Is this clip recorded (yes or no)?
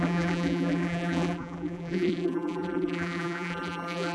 no